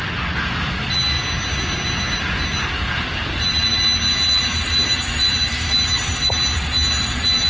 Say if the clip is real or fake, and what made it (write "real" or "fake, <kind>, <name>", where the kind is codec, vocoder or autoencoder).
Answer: real